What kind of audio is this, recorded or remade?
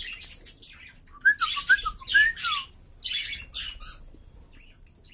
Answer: recorded